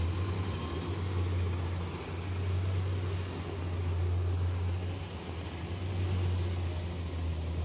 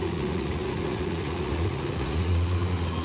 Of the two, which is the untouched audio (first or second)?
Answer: first